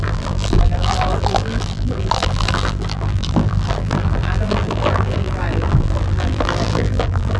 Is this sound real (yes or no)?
no